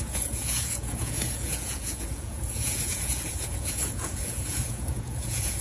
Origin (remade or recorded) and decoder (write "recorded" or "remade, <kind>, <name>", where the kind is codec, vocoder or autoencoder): remade, vocoder, Vocos